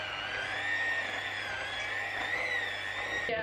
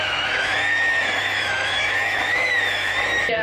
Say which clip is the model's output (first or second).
second